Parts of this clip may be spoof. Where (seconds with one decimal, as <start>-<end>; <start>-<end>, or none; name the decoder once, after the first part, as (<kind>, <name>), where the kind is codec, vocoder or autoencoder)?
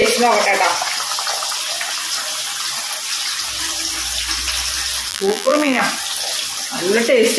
5.1-5.8 (vocoder, BigVGAN v2)